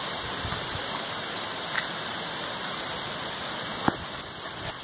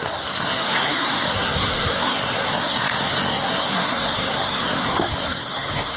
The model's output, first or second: second